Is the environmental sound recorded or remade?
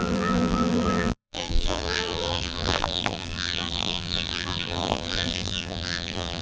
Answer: remade